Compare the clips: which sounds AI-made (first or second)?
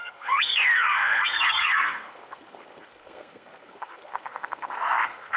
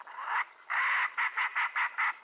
first